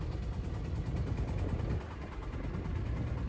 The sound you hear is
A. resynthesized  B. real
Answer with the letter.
B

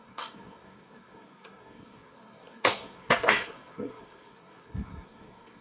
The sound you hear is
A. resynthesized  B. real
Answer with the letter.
A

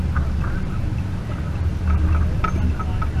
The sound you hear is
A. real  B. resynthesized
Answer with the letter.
A